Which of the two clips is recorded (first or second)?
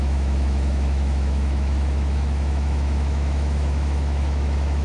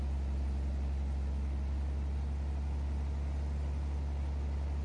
second